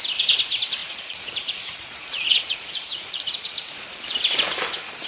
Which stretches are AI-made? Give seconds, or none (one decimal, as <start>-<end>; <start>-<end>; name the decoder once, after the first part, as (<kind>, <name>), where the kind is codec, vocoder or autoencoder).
0.8-3.8 (vocoder, Vocos)